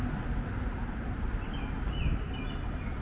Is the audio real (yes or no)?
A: yes